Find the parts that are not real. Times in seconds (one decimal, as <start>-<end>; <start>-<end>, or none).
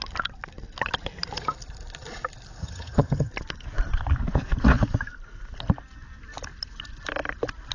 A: 2.6-3.3